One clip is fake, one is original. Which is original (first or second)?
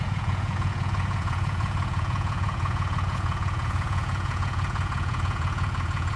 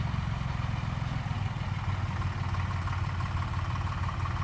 second